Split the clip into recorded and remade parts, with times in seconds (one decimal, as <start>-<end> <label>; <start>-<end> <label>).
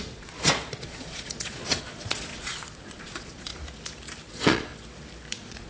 0.0-3.5 remade; 3.5-4.3 recorded; 4.3-4.7 remade; 4.7-5.3 recorded; 5.3-5.7 remade